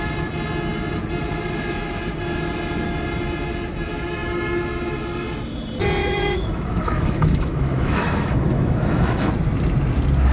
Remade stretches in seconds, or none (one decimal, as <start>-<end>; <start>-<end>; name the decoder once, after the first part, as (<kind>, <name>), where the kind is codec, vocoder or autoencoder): 6.0-9.3 (autoencoder, DAC-VAE)